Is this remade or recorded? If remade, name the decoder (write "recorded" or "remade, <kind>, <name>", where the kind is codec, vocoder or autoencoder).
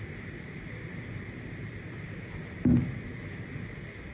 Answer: remade, vocoder, BigVGAN v2